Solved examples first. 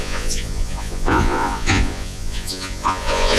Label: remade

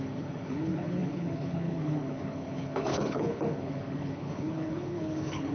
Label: remade